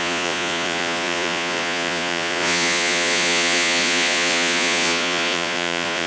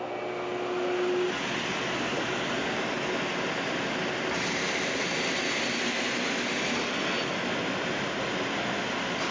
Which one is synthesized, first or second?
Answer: first